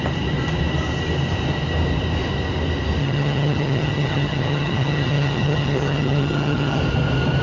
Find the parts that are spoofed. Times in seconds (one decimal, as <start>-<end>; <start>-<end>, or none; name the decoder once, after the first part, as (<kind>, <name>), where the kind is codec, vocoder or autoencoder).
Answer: 3.0-6.8 (vocoder, HiFi-GAN)